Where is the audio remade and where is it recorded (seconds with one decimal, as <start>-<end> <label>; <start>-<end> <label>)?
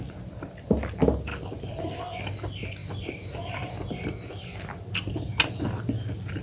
0.0-6.4 recorded